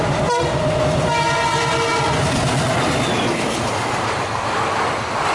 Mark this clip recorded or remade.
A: recorded